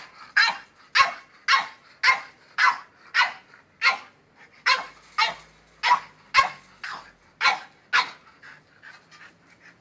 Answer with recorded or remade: recorded